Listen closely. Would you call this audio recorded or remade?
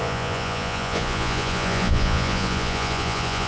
remade